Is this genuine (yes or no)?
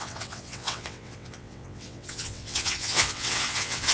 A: no